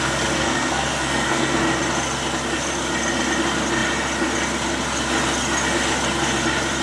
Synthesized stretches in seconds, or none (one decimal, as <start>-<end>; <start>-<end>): 0.4-1.6